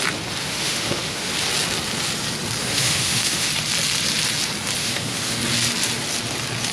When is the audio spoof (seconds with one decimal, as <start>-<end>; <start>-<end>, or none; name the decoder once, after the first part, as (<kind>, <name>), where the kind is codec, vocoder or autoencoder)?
0.4-1.3 (autoencoder, DAC-VAE); 2.6-3.5; 4.8-5.4